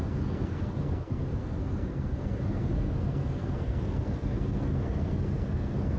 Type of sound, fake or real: fake